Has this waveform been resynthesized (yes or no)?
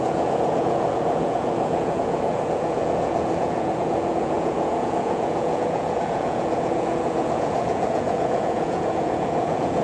yes